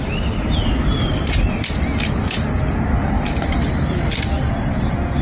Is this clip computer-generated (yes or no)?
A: no